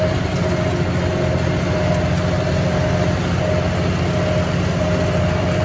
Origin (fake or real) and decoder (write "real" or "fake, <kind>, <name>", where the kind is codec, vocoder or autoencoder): real